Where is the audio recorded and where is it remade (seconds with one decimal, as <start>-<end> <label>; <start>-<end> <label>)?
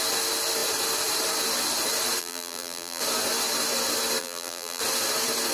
0.0-2.2 recorded; 2.2-3.0 remade; 3.0-4.2 recorded; 4.2-4.8 remade; 4.8-5.5 recorded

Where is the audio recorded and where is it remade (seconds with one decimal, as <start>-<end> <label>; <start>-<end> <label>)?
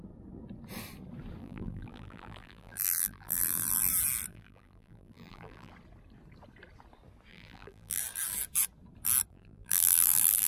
0.0-1.4 recorded; 1.4-3.9 remade; 3.9-4.3 recorded; 4.3-5.7 remade; 5.7-7.3 recorded; 7.3-8.0 remade; 8.0-9.3 recorded; 9.3-10.5 remade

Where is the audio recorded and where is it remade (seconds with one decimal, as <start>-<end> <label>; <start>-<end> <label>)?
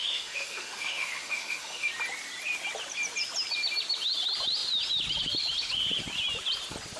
0.0-1.9 remade; 1.9-7.0 recorded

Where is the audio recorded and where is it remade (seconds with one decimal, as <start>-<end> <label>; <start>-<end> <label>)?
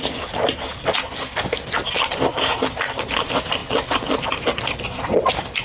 0.0-5.6 recorded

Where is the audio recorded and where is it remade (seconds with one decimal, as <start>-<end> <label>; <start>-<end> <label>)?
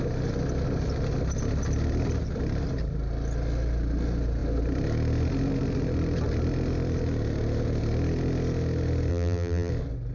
0.0-9.1 recorded; 9.1-9.7 remade; 9.7-10.1 recorded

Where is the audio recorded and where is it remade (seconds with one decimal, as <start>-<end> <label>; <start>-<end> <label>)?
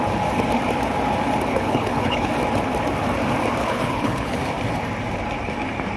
0.0-1.5 recorded; 1.5-2.3 remade; 2.3-3.6 recorded; 3.6-4.4 remade; 4.4-6.0 recorded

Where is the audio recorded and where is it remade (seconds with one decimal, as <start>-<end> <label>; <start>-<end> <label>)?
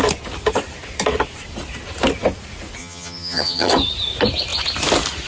0.0-2.8 recorded; 2.8-3.7 remade; 3.7-5.3 recorded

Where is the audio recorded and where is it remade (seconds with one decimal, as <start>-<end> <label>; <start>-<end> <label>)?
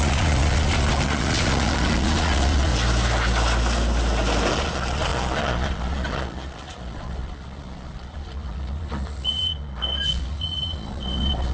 0.0-2.7 remade; 2.7-4.5 recorded; 4.5-11.5 remade